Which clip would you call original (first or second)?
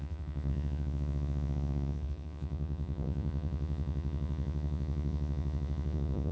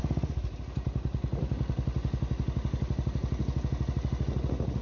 second